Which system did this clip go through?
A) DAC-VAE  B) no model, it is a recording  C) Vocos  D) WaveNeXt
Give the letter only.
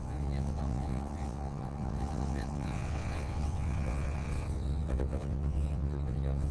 D